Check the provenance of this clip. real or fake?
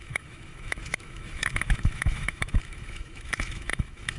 fake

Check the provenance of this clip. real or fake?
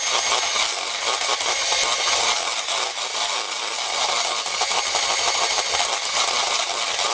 real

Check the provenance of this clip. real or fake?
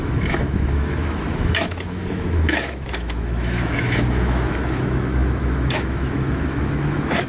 fake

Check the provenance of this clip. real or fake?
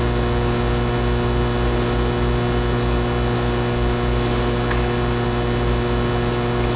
real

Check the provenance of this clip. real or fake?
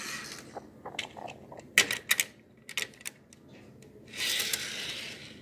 real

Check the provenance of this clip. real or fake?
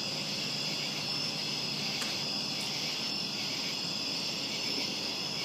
real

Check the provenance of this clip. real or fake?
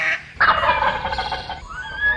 real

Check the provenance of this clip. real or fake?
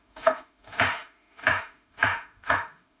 fake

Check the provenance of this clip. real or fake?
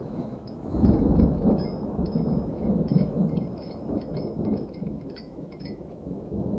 fake